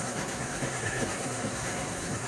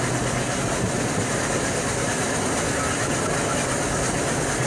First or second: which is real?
second